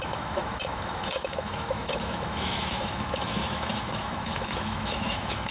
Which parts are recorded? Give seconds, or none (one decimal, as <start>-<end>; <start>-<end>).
none